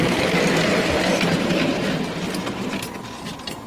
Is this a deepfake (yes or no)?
no